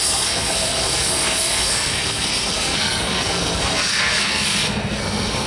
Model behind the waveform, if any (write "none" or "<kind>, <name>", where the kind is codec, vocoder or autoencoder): codec, SNAC